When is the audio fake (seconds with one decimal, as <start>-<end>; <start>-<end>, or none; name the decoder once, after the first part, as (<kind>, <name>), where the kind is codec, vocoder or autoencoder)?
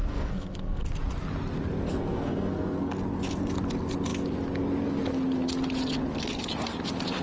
0.0-0.8 (codec, SNAC); 1.9-2.9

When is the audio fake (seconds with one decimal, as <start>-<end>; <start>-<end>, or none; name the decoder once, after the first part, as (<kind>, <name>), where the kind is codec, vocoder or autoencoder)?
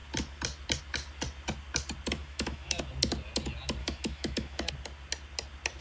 2.2-2.8 (autoencoder, DAC-VAE); 3.8-4.7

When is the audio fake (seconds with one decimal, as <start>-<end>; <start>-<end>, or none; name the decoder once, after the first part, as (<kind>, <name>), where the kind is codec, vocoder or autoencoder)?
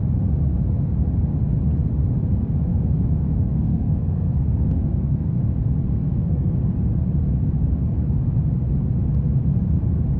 2.7-5.4 (codec, SNAC); 5.9-6.6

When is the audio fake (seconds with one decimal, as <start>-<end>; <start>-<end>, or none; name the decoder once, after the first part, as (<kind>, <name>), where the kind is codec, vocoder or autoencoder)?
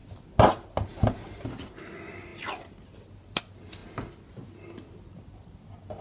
none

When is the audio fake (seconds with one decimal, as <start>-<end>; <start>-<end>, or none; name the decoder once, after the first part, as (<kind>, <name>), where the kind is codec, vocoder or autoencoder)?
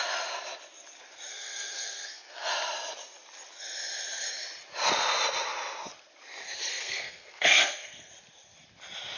1.3-2.5 (codec, SNAC); 6.7-8.1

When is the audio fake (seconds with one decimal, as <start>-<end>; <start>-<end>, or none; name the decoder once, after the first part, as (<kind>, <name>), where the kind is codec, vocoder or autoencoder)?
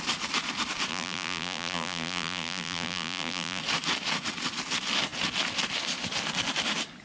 0.9-3.6 (vocoder, BigVGAN v2)